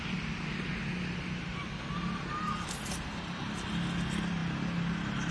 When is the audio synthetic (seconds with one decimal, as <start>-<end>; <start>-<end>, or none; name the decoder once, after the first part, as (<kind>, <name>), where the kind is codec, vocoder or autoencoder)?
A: none